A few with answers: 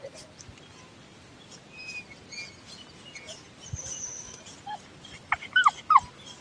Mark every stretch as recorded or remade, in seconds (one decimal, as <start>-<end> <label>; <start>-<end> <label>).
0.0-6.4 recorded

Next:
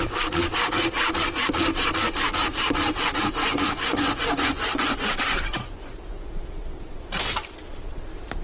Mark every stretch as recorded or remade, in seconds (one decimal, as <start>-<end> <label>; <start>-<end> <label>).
0.0-3.4 recorded; 3.4-6.3 remade; 6.3-8.4 recorded

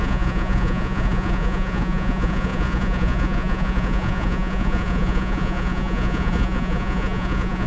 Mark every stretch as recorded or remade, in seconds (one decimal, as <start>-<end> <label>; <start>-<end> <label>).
0.0-7.7 remade